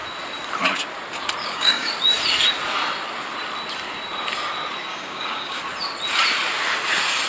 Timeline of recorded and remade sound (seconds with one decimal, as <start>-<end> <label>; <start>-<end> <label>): 0.0-1.4 recorded; 1.4-1.9 remade; 1.9-4.9 recorded; 4.9-5.6 remade; 5.6-7.3 recorded